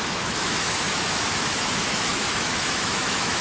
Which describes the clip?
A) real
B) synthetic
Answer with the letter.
B